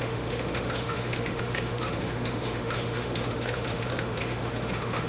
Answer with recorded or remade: remade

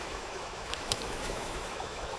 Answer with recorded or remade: remade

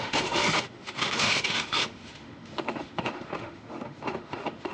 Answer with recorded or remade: remade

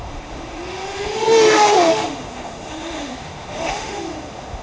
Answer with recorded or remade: remade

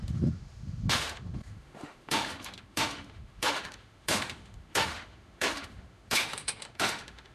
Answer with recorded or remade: remade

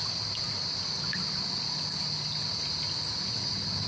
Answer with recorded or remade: recorded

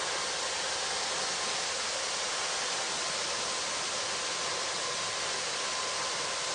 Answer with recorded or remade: recorded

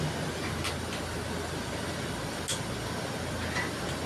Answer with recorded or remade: recorded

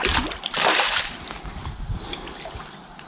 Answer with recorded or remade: recorded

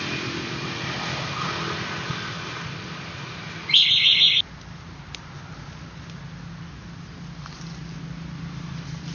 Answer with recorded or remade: recorded